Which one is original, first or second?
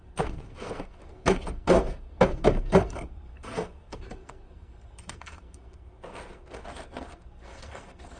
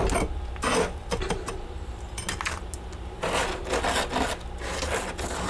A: second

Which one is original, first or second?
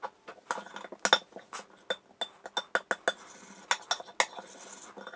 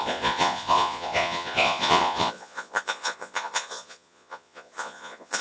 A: first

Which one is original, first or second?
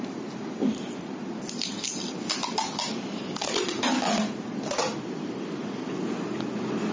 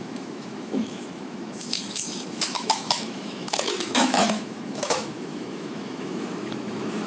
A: first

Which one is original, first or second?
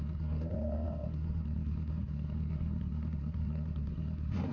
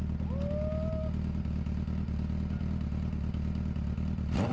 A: second